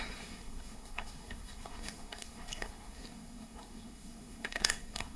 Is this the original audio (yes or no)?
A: no